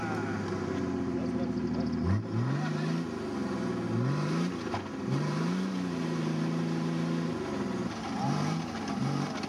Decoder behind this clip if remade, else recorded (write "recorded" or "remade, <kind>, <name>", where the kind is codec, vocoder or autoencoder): recorded